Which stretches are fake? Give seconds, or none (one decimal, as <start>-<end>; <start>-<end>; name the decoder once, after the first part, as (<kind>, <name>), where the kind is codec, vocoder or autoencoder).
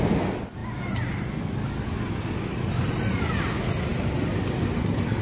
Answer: none